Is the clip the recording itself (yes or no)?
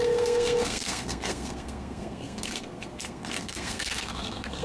no